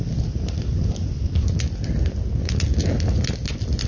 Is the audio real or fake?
real